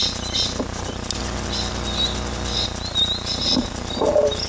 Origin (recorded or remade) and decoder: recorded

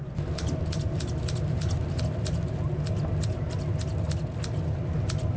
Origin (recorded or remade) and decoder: recorded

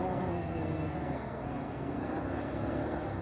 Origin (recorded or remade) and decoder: remade, codec, SNAC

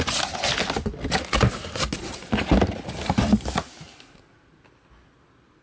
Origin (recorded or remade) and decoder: recorded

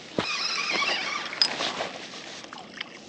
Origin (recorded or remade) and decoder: recorded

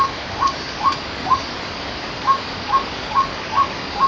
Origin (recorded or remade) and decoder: remade, codec, DAC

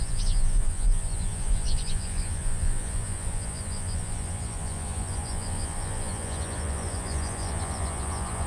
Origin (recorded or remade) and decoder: remade, vocoder, Vocos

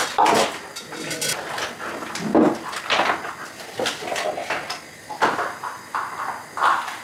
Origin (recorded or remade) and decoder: recorded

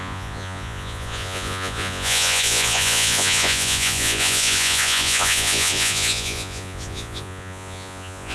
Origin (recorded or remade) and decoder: remade, vocoder, Vocos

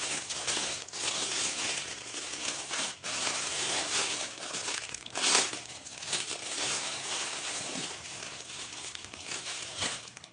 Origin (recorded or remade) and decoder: remade, codec, SNAC